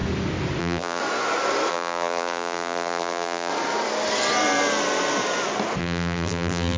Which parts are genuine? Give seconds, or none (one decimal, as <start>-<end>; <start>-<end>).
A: 0.0-0.6; 1.0-1.7; 3.5-5.8